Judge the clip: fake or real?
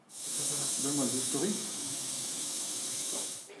fake